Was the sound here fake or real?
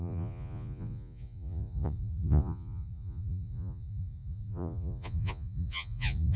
fake